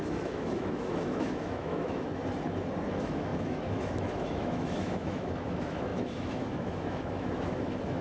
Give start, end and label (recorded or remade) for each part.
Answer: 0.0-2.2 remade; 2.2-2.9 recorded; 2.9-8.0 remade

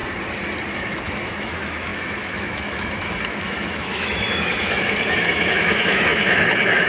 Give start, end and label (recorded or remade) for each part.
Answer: 0.0-0.7 recorded; 0.7-6.9 remade

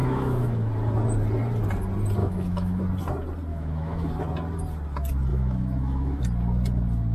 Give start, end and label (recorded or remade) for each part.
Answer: 0.0-0.7 remade; 0.7-2.2 recorded; 2.2-2.8 remade; 2.8-3.5 recorded; 3.5-4.1 remade; 4.1-5.3 recorded; 5.3-6.2 remade; 6.2-7.1 recorded

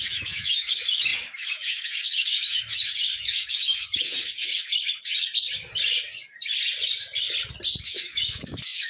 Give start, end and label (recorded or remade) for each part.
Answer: 0.0-5.1 remade; 5.1-7.8 recorded; 7.8-8.9 remade

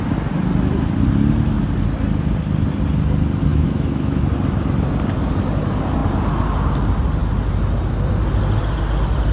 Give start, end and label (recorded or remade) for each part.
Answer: 0.0-3.5 recorded; 3.5-4.2 remade; 4.2-9.3 recorded

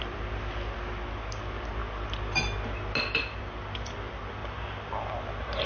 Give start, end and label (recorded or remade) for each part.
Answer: 0.0-5.7 recorded